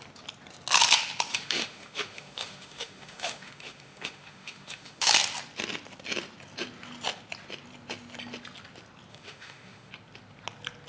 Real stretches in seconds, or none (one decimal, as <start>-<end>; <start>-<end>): 0.0-1.3; 5.1-9.1; 9.9-10.9